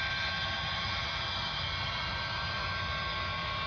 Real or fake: real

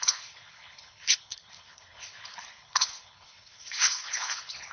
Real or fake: fake